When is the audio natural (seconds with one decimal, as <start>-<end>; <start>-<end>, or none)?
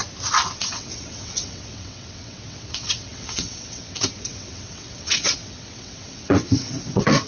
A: 0.0-0.5